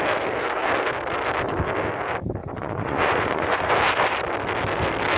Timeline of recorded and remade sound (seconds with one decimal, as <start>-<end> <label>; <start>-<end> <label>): 0.0-2.4 recorded; 2.4-3.7 remade; 3.7-5.2 recorded